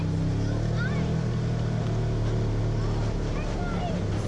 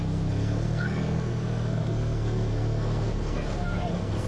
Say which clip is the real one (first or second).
first